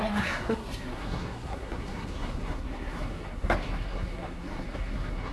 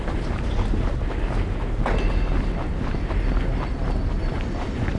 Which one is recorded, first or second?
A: second